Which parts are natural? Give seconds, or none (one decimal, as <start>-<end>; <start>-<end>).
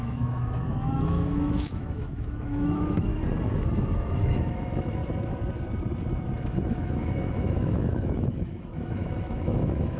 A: 3.1-4.1; 5.0-6.4